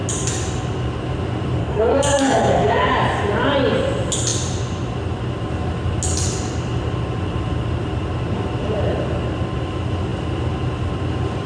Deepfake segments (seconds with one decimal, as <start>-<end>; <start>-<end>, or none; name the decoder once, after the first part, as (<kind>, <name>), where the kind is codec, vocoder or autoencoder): 1.6-2.9 (codec, SNAC)